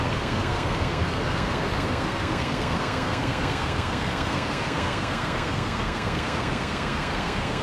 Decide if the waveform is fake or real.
fake